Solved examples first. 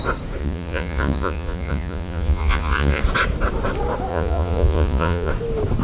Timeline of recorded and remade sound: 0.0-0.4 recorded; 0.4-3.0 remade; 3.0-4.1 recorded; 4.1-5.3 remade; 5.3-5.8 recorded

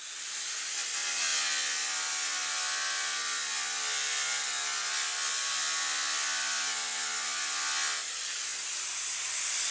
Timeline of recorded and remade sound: 0.0-9.7 recorded

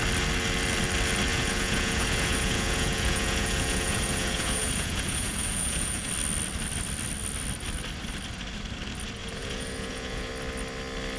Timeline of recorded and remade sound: 0.0-1.3 recorded; 1.3-6.1 remade; 6.1-9.2 recorded; 9.2-10.3 remade; 10.3-11.2 recorded

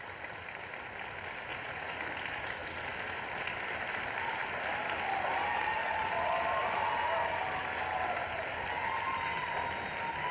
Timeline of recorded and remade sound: 0.0-1.5 recorded; 1.5-2.0 remade; 2.0-10.3 recorded

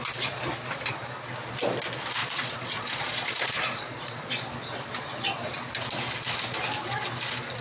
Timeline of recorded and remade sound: 0.0-2.2 recorded; 2.2-4.3 remade; 4.3-7.6 recorded

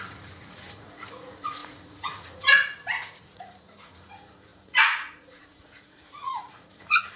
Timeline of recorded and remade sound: 0.0-7.2 remade